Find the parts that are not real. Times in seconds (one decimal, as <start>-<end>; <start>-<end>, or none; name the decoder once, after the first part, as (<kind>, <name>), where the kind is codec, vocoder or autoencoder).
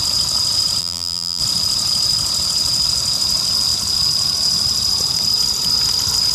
0.8-1.4 (vocoder, BigVGAN v2)